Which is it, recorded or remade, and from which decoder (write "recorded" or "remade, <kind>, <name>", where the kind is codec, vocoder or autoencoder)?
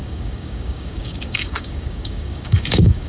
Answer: remade, codec, DAC